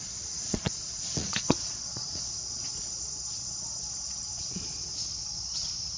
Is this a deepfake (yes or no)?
yes